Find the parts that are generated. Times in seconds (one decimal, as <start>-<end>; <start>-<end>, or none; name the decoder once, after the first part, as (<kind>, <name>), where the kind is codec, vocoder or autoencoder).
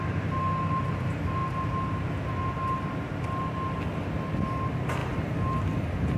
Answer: none